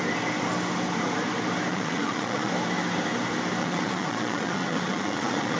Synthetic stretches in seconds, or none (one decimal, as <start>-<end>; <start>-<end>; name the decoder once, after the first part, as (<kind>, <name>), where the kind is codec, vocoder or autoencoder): 1.7-2.5 (vocoder, Vocos); 3.6-5.6